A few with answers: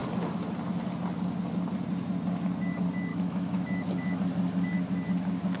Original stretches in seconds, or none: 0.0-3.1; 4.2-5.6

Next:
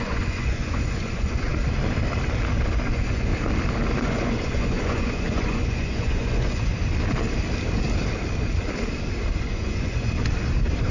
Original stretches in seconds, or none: 1.5-2.9; 3.3-4.0; 6.7-9.4; 10.1-10.9

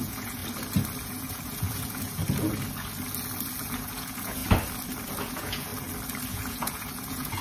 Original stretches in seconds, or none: 0.4-1.0; 2.2-3.6; 4.4-5.2; 5.7-6.3

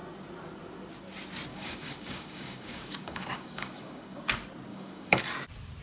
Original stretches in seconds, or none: 0.0-1.5; 4.2-4.7; 5.2-5.8

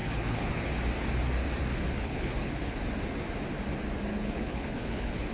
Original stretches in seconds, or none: 0.7-1.7; 2.8-4.1

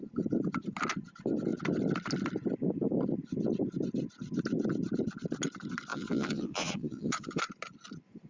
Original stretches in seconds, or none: 0.0-5.9; 7.4-8.3

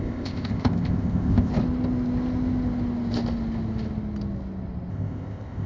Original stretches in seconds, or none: 1.5-4.9